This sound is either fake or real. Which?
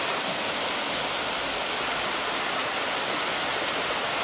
real